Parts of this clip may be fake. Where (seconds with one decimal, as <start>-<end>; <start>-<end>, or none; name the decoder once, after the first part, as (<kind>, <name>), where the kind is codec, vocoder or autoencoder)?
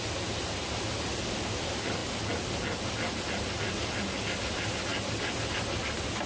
none